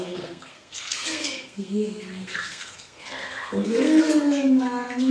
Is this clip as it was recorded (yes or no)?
no